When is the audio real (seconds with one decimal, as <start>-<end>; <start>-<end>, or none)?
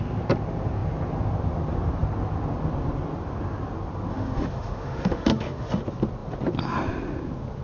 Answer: 0.0-4.1; 5.8-7.6